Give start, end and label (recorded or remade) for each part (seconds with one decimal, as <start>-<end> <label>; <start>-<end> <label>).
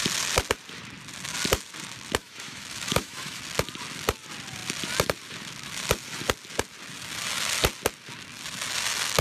0.0-2.2 recorded; 2.2-3.4 remade; 3.4-9.2 recorded